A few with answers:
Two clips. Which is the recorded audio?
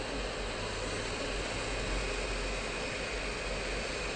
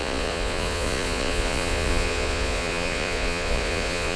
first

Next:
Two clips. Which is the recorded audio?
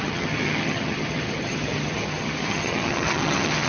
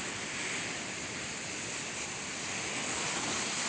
second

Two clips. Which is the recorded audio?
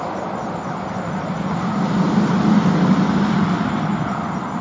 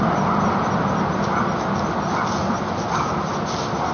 second